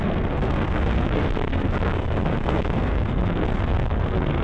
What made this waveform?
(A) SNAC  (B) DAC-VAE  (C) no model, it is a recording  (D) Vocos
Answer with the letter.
A